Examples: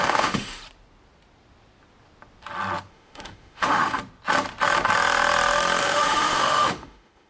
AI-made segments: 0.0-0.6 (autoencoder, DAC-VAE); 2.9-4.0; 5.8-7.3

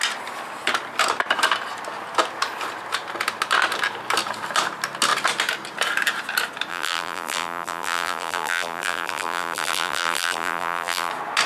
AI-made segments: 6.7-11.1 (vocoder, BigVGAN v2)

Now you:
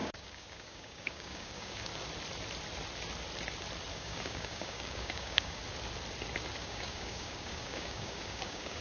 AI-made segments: 0.0-1.9 (codec, DAC); 3.9-5.6; 6.6-8.8